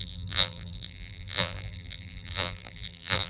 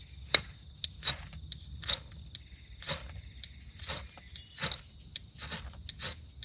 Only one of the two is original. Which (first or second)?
second